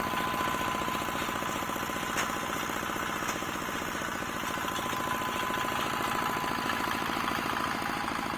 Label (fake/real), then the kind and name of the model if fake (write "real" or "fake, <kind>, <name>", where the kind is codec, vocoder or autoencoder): real